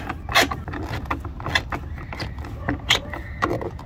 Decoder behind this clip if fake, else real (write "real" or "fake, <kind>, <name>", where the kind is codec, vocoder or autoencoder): real